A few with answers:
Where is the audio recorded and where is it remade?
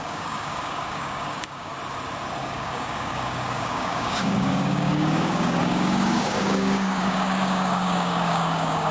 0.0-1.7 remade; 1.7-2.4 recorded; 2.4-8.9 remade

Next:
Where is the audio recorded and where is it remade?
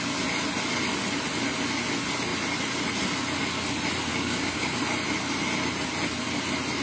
0.0-4.1 recorded; 4.1-4.8 remade; 4.8-6.8 recorded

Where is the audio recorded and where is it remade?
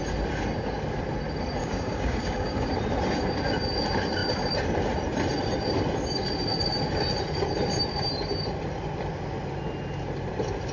0.0-1.6 recorded; 1.6-2.7 remade; 2.7-10.7 recorded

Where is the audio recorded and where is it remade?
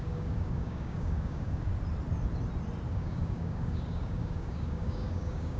0.0-1.7 remade; 1.7-2.9 recorded; 2.9-5.6 remade